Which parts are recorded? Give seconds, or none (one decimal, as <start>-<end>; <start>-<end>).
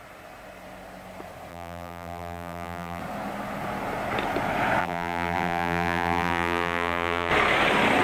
0.0-1.5; 3.0-4.8; 7.3-8.0